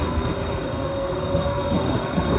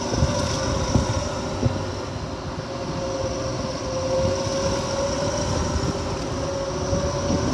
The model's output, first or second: first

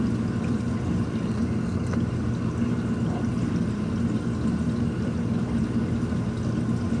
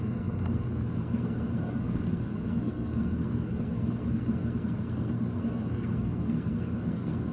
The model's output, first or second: second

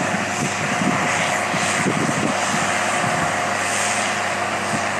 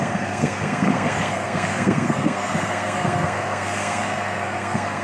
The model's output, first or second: second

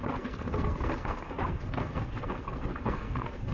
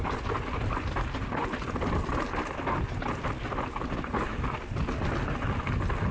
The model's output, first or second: first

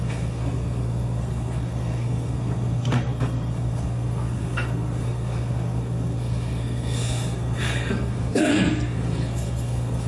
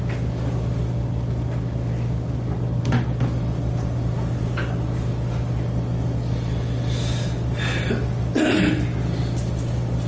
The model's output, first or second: first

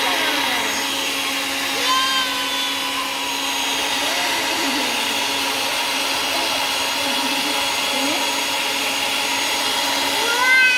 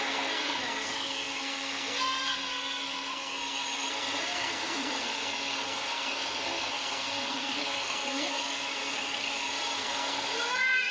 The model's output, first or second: second